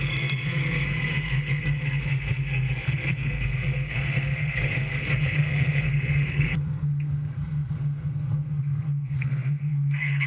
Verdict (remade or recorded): remade